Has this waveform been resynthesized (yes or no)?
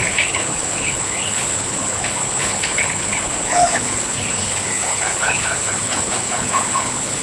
yes